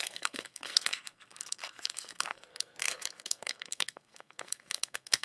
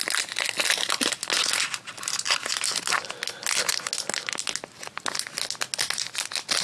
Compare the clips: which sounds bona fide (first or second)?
second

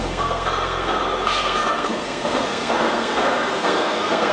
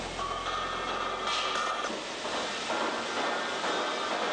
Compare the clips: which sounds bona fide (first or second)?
second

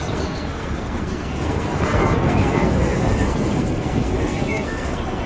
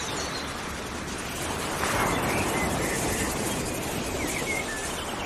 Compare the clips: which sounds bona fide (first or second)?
second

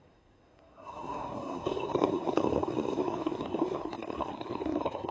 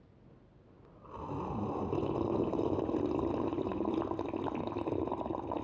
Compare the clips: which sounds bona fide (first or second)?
second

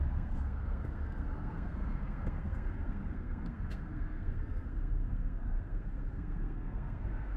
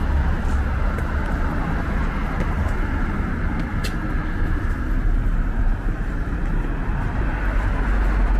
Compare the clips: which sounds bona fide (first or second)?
second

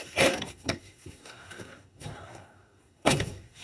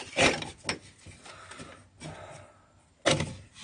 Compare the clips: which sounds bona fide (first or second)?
second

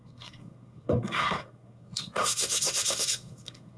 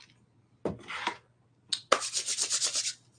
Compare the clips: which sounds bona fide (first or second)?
second